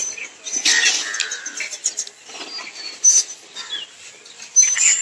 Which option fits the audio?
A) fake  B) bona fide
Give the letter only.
B